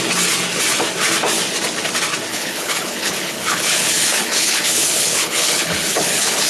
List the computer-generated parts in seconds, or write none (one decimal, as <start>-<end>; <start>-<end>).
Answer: 2.3-6.5